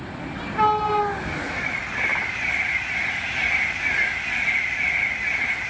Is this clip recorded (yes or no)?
yes